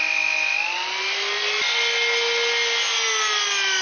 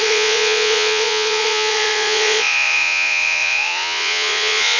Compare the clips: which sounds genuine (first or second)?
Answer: first